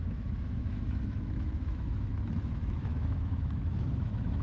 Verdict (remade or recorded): remade